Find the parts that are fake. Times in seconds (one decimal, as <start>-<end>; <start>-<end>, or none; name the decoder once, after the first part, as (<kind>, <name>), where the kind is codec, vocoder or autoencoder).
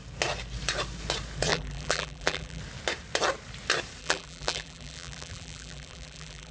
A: 1.5-2.6 (vocoder, BigVGAN v2); 4.0-6.5